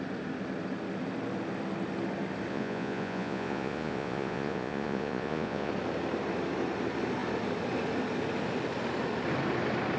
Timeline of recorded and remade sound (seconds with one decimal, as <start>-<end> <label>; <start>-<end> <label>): 0.0-2.5 recorded; 2.5-5.7 remade; 5.7-10.0 recorded